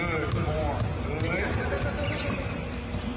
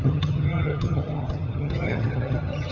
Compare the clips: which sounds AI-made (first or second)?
second